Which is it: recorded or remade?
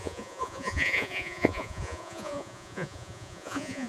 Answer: remade